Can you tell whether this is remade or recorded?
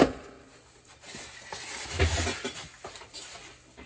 recorded